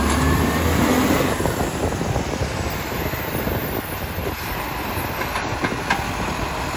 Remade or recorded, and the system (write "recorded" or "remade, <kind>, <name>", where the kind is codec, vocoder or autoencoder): remade, vocoder, BigVGAN v2